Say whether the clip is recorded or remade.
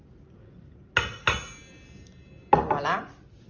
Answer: recorded